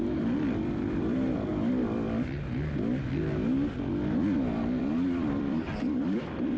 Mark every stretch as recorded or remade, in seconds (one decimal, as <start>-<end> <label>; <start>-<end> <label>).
0.0-1.5 remade; 1.5-4.8 recorded; 4.8-6.6 remade